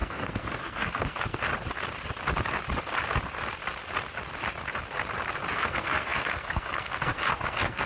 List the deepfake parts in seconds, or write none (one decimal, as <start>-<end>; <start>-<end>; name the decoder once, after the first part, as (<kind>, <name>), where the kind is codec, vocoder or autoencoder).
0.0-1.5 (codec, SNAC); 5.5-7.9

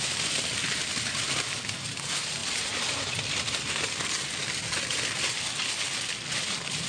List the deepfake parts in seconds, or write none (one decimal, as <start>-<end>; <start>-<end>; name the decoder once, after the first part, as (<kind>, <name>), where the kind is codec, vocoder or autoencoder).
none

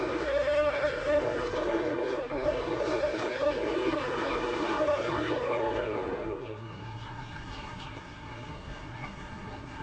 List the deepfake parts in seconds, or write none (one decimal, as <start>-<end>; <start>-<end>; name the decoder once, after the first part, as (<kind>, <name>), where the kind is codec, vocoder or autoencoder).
0.0-9.8 (codec, SNAC)